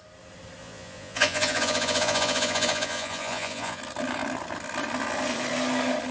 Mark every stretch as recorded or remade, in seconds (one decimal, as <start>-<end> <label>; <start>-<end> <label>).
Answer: 0.0-0.6 recorded; 0.6-3.8 remade; 3.8-6.1 recorded